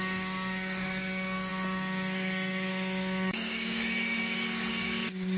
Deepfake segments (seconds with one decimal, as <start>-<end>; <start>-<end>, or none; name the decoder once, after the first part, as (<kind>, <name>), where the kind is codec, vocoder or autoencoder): 0.0-5.4 (codec, DAC)